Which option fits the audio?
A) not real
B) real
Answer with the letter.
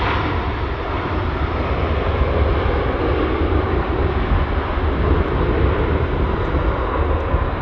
B